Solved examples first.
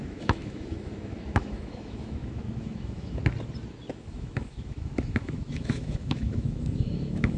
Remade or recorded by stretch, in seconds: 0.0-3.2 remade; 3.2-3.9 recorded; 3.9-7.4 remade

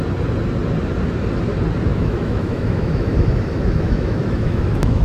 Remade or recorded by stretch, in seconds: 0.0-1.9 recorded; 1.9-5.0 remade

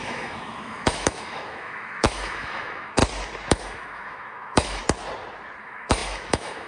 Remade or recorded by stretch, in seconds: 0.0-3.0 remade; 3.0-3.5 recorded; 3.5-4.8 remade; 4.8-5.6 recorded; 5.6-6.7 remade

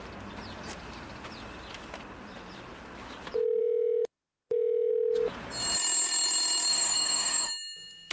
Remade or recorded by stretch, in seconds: 0.0-3.6 recorded; 3.6-4.9 remade; 4.9-6.7 recorded; 6.7-7.5 remade; 7.5-8.1 recorded

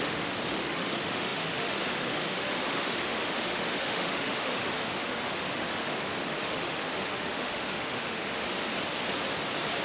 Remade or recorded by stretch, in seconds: 0.0-8.7 remade; 8.7-9.8 recorded

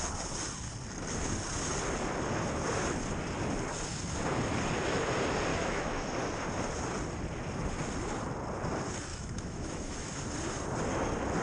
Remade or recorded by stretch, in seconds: 0.0-5.5 recorded; 5.5-6.1 remade; 6.1-9.1 recorded; 9.1-10.2 remade; 10.2-11.4 recorded